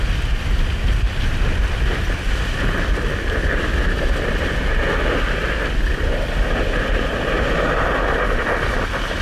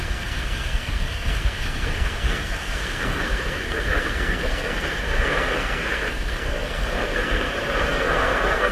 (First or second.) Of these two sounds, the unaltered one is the first